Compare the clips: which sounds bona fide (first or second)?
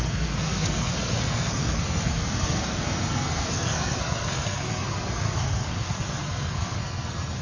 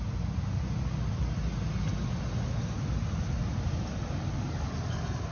second